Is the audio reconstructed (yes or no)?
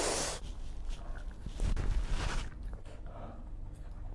no